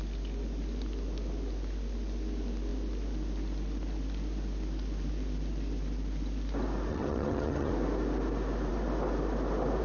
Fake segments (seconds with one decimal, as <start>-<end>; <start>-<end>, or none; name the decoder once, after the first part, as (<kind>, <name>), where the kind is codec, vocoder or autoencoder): 6.9-7.7 (vocoder, HiFi-GAN)